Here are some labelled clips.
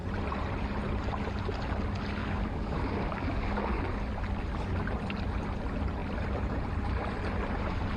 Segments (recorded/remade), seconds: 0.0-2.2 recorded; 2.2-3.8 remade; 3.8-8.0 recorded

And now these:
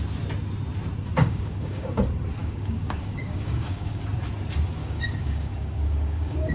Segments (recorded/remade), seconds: 0.0-1.2 recorded; 1.2-2.0 remade; 2.0-2.4 recorded; 2.4-4.0 remade; 4.0-4.8 recorded; 4.8-6.5 remade